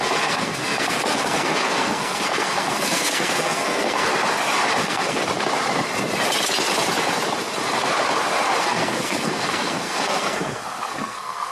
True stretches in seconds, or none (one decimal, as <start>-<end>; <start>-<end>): 4.1-4.8; 5.2-8.6